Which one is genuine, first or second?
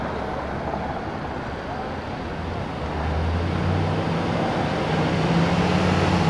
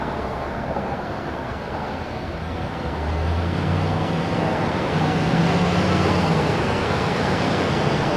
first